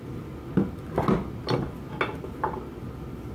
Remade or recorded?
recorded